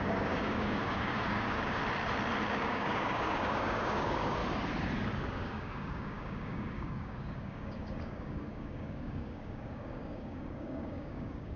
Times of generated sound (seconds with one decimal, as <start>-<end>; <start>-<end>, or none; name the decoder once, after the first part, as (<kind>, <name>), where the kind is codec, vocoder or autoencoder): 0.0-1.8 (codec, DAC); 2.6-4.4; 5.3-11.6